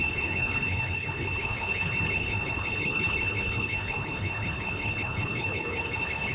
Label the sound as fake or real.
fake